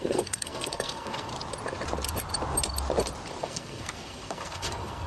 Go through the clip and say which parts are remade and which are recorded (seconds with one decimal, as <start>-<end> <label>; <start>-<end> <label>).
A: 0.0-1.3 remade; 1.3-3.4 recorded; 3.4-5.1 remade